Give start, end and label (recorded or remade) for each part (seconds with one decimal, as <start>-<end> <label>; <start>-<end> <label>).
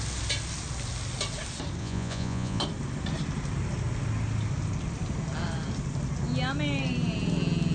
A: 0.0-1.8 recorded; 1.8-2.6 remade; 2.6-7.7 recorded